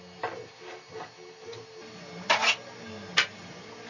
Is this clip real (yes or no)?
yes